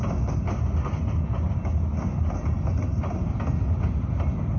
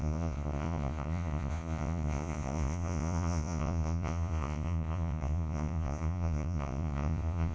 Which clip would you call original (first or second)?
first